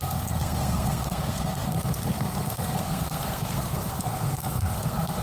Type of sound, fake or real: fake